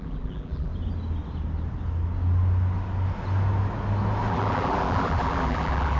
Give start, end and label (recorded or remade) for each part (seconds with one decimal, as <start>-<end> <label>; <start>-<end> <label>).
0.0-0.7 remade; 0.7-4.3 recorded; 4.3-6.0 remade